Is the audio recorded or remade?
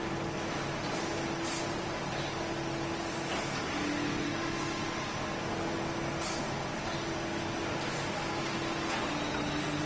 recorded